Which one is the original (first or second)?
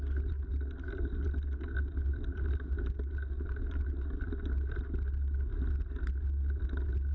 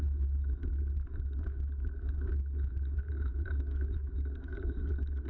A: first